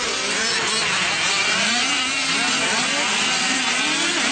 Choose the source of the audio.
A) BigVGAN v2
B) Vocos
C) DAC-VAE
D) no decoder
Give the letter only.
D